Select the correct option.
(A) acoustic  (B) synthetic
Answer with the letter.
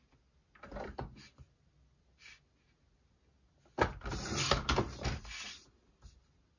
A